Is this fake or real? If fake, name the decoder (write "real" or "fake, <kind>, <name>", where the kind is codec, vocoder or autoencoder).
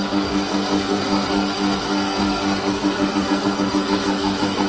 fake, codec, SNAC